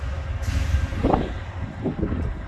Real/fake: real